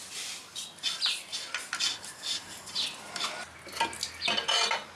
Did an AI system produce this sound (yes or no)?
no